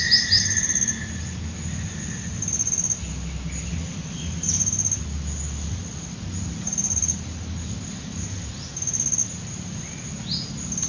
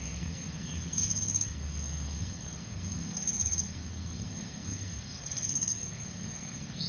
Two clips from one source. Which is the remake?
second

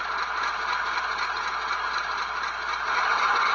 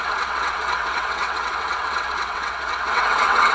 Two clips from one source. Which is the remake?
second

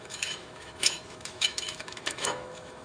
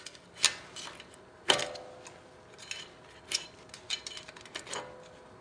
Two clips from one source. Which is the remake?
first